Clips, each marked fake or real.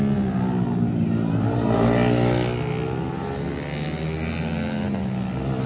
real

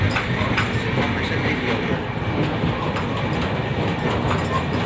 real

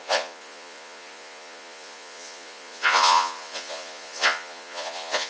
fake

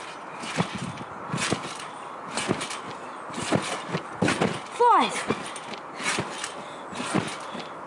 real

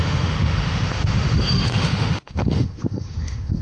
fake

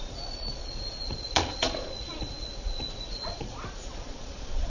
fake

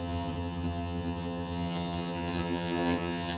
fake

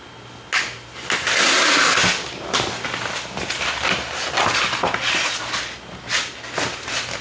real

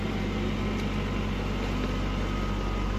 real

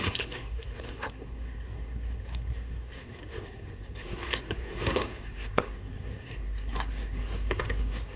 fake